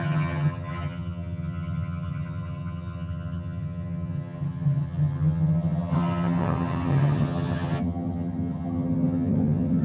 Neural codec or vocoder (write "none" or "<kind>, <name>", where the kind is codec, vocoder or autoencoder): vocoder, HiFi-GAN